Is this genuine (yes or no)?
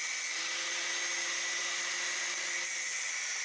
yes